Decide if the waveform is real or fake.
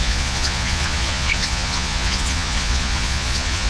fake